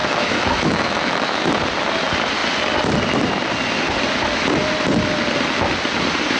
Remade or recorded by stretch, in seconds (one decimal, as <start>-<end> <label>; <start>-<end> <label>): 0.0-1.5 remade; 1.5-6.4 recorded